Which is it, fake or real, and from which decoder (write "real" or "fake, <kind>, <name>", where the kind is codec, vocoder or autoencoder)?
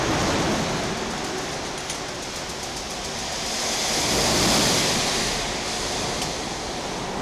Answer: real